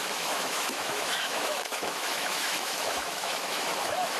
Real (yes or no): no